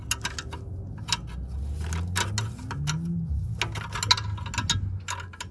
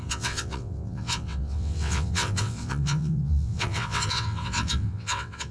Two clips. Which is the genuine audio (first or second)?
first